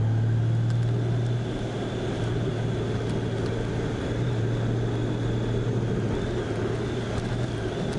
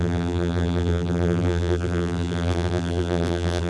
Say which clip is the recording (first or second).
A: first